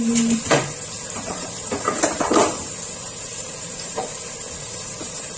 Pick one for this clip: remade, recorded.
remade